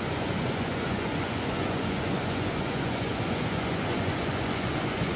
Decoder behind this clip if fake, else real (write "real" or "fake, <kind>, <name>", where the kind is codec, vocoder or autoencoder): fake, vocoder, Vocos